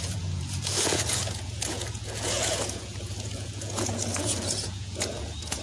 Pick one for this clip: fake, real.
fake